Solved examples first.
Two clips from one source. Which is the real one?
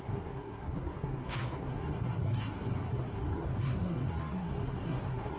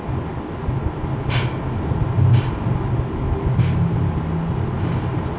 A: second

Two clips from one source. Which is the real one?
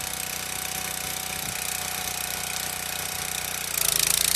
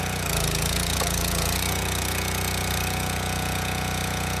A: first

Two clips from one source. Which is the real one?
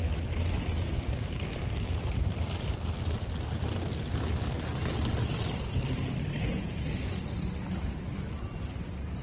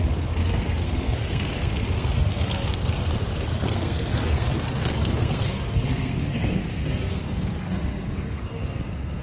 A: first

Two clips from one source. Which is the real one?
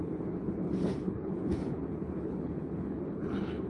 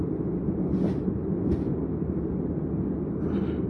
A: second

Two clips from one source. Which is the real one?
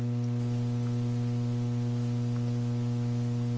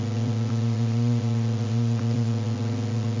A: first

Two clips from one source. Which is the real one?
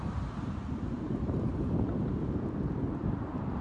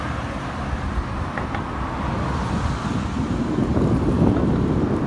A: second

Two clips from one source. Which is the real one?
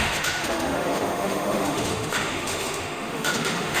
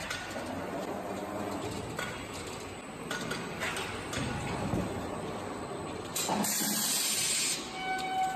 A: second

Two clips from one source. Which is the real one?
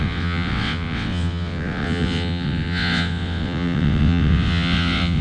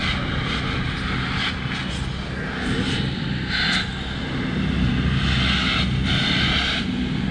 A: second